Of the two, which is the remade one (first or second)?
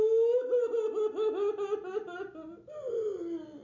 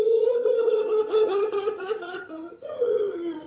second